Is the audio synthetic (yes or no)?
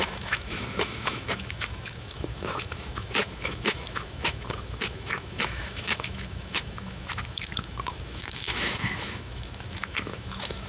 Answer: yes